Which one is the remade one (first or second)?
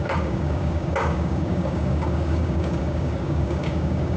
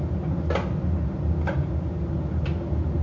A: first